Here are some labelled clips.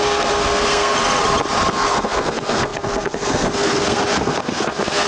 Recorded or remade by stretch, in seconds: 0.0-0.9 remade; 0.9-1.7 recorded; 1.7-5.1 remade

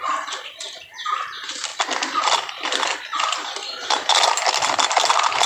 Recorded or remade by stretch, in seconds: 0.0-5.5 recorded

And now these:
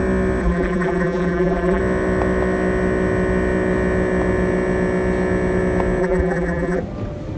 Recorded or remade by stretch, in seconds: 0.0-0.4 recorded; 0.4-1.8 remade; 1.8-6.0 recorded; 6.0-6.8 remade; 6.8-7.4 recorded

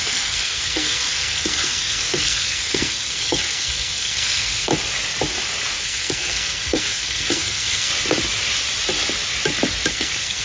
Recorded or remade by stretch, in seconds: 0.0-4.7 remade; 4.7-5.8 recorded; 5.8-7.9 remade; 7.9-9.9 recorded; 9.9-10.4 remade

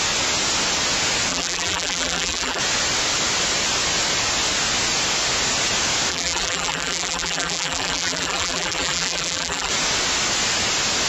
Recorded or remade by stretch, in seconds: 0.0-1.3 recorded; 1.3-2.6 remade; 2.6-6.1 recorded; 6.1-9.7 remade; 9.7-11.1 recorded

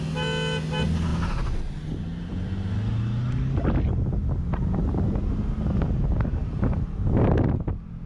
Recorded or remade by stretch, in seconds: 0.0-6.4 recorded; 6.4-7.3 remade; 7.3-8.1 recorded